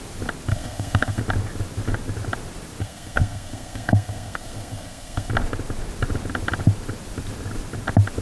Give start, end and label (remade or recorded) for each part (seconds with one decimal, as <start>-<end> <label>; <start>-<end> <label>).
0.0-0.5 recorded; 0.5-1.2 remade; 1.2-2.8 recorded; 2.8-5.3 remade; 5.3-8.2 recorded